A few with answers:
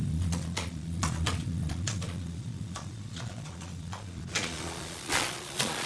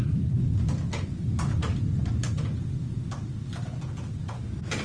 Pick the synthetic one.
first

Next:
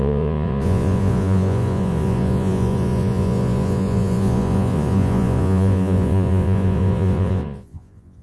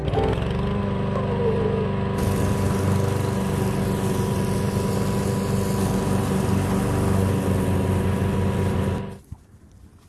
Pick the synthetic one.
first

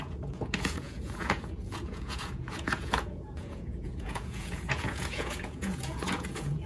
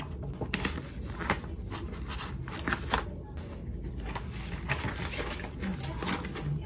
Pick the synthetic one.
first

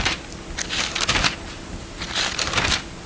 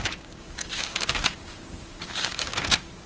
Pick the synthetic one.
second